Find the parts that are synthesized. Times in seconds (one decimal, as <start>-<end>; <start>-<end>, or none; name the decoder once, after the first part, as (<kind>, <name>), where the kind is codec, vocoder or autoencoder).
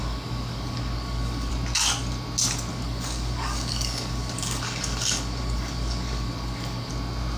0.0-1.5 (codec, DAC); 2.7-6.9